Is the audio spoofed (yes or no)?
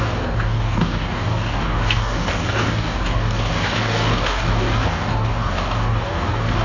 yes